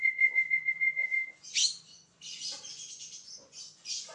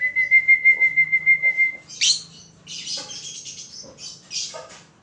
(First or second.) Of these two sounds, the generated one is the first